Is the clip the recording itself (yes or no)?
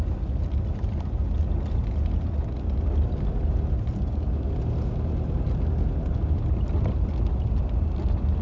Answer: yes